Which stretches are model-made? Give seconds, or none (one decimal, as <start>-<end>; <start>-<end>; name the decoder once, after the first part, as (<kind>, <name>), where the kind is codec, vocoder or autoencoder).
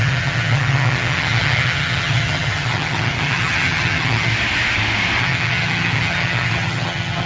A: 0.0-4.3 (vocoder, HiFi-GAN); 5.2-7.3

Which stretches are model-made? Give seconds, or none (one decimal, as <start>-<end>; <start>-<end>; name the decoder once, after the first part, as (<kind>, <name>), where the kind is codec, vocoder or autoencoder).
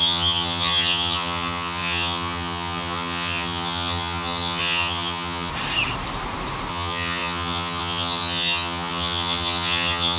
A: 0.0-5.5 (vocoder, HiFi-GAN); 6.7-10.2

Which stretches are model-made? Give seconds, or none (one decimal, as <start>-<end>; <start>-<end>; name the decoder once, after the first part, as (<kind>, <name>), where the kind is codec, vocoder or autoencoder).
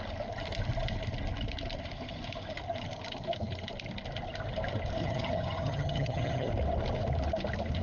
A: 5.0-6.5 (vocoder, HiFi-GAN)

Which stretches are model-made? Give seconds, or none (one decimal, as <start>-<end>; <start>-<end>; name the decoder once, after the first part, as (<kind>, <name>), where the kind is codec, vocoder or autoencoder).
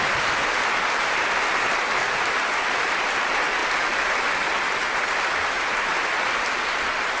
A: none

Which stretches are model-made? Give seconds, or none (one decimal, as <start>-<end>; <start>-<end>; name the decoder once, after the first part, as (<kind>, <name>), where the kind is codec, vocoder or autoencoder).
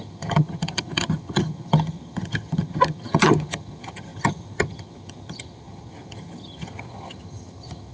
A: 0.0-7.9 (vocoder, HiFi-GAN)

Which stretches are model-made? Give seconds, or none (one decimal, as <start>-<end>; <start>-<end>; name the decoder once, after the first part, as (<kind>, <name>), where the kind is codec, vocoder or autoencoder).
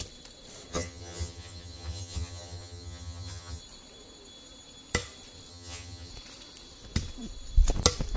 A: 0.7-3.6 (vocoder, HiFi-GAN); 5.5-6.1